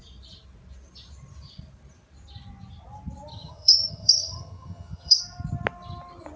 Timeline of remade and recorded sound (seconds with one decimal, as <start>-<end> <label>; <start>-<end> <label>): 0.0-3.3 recorded; 3.3-5.2 remade; 5.2-6.4 recorded